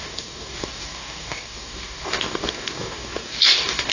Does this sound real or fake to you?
fake